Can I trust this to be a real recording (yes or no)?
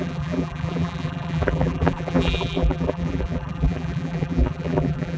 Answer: no